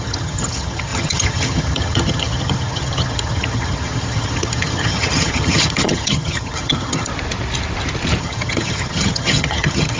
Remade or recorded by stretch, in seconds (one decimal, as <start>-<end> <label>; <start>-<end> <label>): 0.0-7.1 remade; 7.1-8.2 recorded; 8.2-10.0 remade

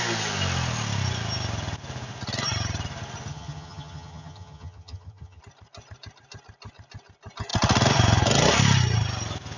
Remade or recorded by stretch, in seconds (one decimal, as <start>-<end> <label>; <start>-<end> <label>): 0.0-3.3 recorded; 3.3-5.4 remade; 5.4-9.6 recorded

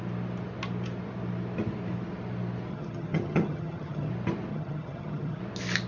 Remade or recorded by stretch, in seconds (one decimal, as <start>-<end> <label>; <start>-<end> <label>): 0.0-2.7 recorded; 2.7-4.1 remade; 4.1-4.5 recorded; 4.5-5.4 remade; 5.4-5.9 recorded

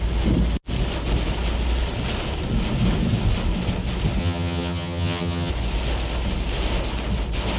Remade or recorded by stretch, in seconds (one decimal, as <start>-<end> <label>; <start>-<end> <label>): 0.0-4.2 recorded; 4.2-5.5 remade; 5.5-7.6 recorded

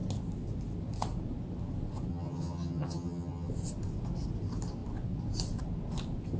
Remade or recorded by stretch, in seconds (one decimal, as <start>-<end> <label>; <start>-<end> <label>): 0.0-2.1 recorded; 2.1-3.5 remade; 3.5-6.4 recorded

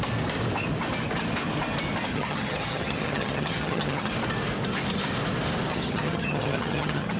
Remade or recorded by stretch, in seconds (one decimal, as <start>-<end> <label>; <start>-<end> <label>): 0.0-2.1 recorded; 2.1-4.1 remade; 4.1-5.7 recorded; 5.7-7.2 remade

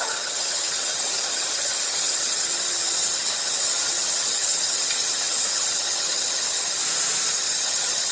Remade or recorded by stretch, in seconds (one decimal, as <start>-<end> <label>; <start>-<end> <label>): 0.0-6.8 remade; 6.8-7.3 recorded; 7.3-8.1 remade